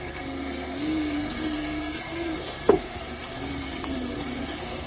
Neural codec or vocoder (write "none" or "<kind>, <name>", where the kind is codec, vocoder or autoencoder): codec, SNAC